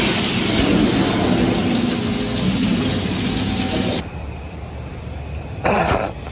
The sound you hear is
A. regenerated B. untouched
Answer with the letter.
B